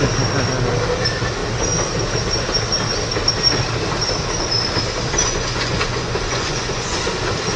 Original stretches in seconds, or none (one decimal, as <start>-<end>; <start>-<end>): 0.0-5.2; 7.0-7.6